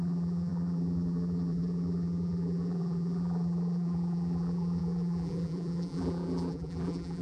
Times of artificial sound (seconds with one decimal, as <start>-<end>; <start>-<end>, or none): 0.0-7.2